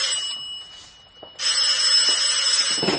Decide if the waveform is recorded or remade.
recorded